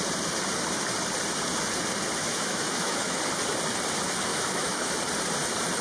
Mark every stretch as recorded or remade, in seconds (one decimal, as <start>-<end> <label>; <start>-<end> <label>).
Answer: 0.0-2.2 recorded; 2.2-3.2 remade; 3.2-4.3 recorded; 4.3-5.0 remade; 5.0-5.8 recorded